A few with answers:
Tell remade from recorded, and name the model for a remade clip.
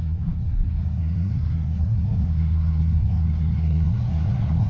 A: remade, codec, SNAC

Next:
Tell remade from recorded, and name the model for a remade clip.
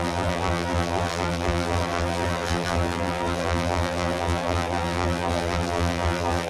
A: remade, vocoder, BigVGAN v2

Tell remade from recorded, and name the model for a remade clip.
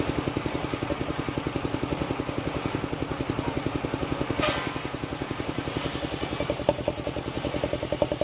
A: recorded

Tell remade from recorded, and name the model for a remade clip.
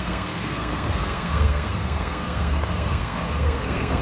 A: remade, codec, SNAC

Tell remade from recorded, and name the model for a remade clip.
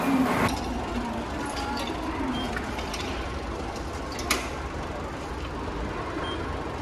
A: recorded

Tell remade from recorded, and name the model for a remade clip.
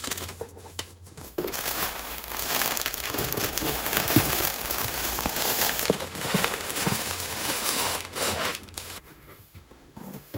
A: remade, autoencoder, DAC-VAE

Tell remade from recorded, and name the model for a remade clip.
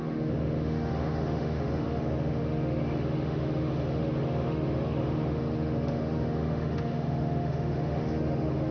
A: remade, autoencoder, DAC-VAE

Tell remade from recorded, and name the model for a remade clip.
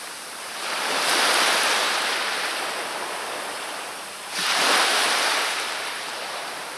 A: remade, vocoder, BigVGAN v2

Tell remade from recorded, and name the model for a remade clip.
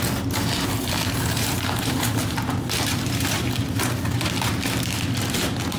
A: recorded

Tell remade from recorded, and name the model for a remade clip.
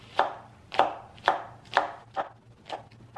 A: recorded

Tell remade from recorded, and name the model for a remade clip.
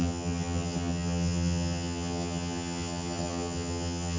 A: remade, vocoder, HiFi-GAN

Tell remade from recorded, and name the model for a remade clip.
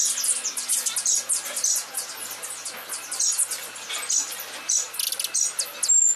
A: recorded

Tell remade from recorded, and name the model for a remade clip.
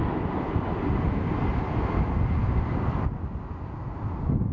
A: recorded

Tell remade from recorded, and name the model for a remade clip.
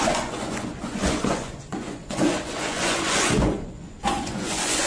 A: remade, vocoder, Vocos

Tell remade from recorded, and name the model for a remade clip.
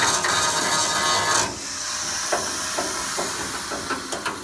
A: recorded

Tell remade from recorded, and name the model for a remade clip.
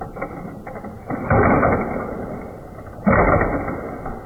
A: recorded